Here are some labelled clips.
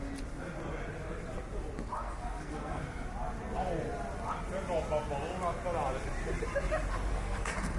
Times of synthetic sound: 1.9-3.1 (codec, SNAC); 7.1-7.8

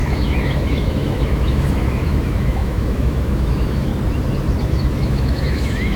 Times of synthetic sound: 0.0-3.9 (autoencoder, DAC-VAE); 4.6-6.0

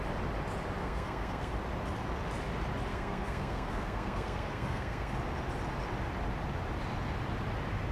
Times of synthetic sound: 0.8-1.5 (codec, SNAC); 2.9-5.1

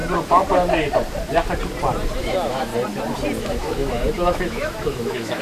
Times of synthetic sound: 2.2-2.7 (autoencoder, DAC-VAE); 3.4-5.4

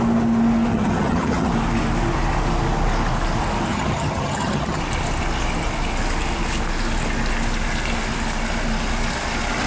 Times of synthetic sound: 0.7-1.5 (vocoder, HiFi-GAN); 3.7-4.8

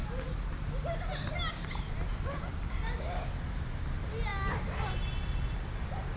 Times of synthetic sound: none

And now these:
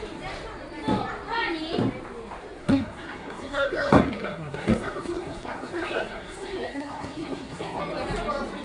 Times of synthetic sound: 2.6-7.8 (codec, SNAC)